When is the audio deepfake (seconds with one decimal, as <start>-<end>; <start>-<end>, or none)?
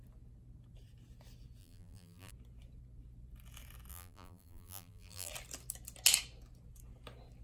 1.6-2.3; 3.9-5.3